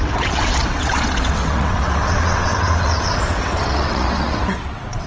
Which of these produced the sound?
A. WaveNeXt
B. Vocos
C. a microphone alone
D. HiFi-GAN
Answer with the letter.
A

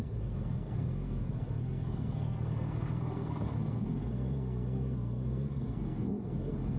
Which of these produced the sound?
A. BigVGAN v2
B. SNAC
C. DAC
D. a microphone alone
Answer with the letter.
B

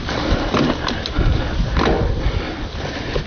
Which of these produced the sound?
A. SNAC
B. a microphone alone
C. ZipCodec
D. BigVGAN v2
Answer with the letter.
B